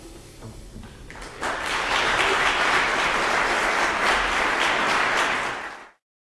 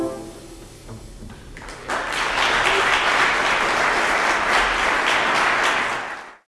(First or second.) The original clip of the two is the second